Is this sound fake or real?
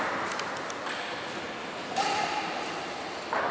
real